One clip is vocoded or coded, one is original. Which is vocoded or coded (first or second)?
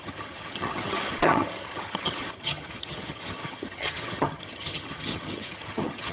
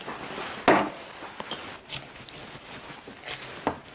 first